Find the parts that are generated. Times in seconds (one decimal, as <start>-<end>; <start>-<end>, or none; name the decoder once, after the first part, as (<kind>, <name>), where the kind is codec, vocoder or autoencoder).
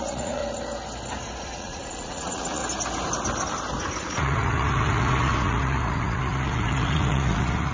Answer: 0.0-0.4 (vocoder, Vocos); 1.4-2.6; 4.0-7.7